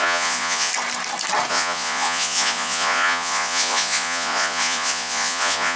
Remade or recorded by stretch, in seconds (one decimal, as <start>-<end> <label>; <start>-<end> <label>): 0.0-0.7 remade; 0.7-1.5 recorded; 1.5-5.8 remade